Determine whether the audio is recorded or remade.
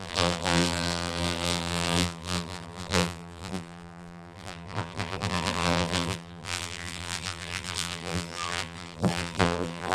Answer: remade